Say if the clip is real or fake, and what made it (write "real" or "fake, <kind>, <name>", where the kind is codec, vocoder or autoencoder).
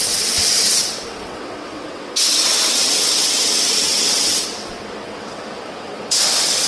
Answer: fake, vocoder, WaveNeXt